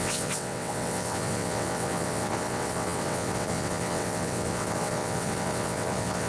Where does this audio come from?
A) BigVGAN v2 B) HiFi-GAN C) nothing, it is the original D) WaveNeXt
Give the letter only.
D